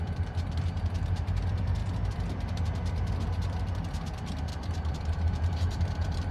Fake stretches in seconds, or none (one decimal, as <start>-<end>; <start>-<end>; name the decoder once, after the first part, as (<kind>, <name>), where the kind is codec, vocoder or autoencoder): 4.5-5.2 (vocoder, BigVGAN v2)